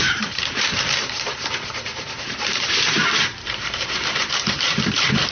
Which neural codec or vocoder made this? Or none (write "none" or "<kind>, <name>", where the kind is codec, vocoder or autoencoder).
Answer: vocoder, BigVGAN v2